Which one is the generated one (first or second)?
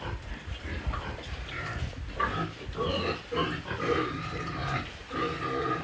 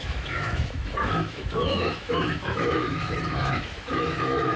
second